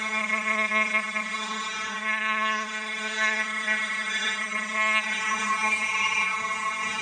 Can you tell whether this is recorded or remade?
remade